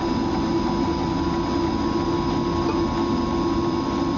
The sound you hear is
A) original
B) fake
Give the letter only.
A